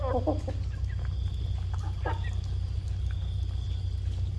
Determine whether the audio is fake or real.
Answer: real